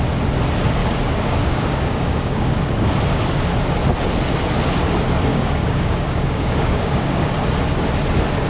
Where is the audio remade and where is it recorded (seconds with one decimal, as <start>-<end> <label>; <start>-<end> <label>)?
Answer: 0.0-0.8 recorded; 0.8-2.6 remade; 2.6-5.3 recorded; 5.3-7.3 remade; 7.3-8.5 recorded